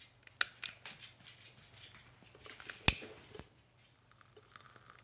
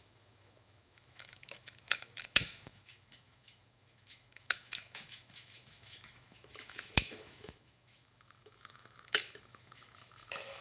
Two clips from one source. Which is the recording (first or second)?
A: first